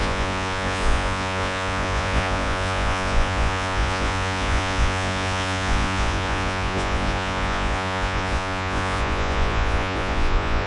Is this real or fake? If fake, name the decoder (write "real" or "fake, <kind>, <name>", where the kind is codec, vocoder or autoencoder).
fake, vocoder, Vocos